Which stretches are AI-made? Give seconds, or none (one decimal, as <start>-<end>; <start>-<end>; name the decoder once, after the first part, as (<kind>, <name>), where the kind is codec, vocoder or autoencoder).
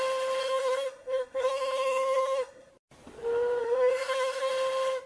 0.4-2.7 (codec, SNAC); 3.6-4.5